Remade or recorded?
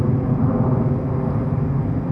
recorded